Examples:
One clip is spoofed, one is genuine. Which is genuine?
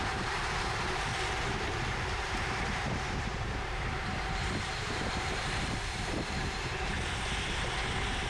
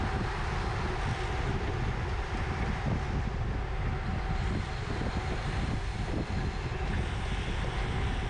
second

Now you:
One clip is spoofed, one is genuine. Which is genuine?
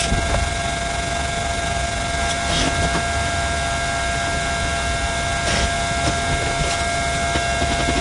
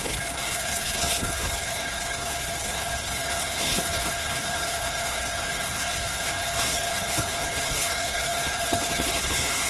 first